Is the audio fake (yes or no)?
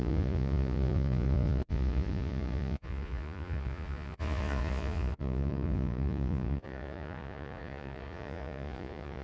yes